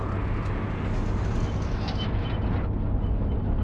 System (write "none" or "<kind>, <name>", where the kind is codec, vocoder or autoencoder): none